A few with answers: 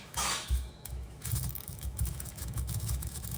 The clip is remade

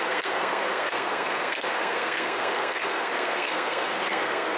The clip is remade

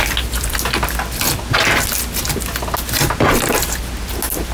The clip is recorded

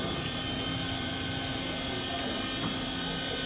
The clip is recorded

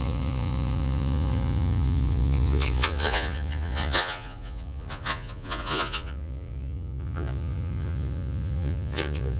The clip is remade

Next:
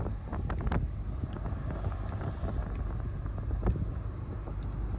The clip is recorded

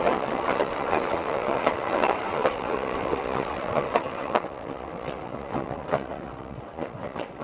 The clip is remade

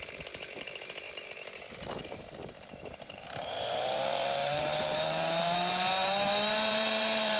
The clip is remade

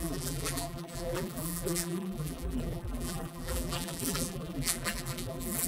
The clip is remade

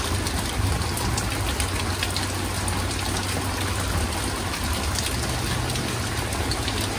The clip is recorded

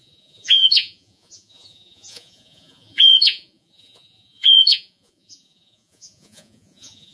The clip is remade